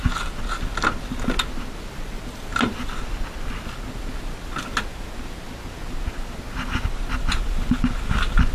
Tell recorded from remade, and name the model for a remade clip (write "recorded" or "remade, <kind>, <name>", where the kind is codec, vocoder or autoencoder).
recorded